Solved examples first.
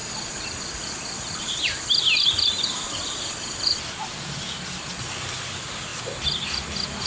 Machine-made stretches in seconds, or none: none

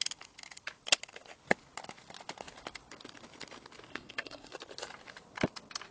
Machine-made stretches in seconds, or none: 3.9-4.5 (codec, SNAC)

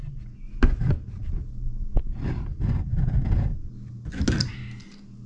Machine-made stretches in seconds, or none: 2.9-3.7 (vocoder, Vocos)

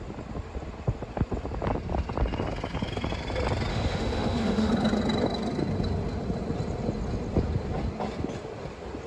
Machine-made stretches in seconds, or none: 3.7-4.7 (autoencoder, DAC-VAE)

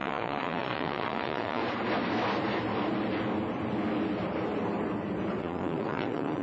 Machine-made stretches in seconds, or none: 0.0-1.6 (vocoder, Vocos); 5.4-6.4

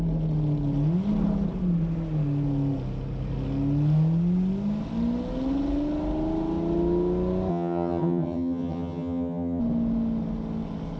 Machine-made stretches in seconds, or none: 7.5-9.6 (vocoder, HiFi-GAN)

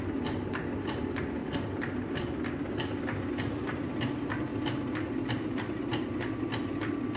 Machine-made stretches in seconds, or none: none

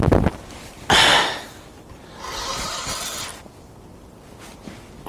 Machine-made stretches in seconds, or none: none